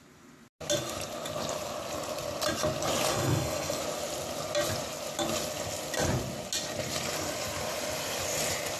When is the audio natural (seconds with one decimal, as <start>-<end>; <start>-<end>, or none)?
0.0-3.1; 3.8-8.8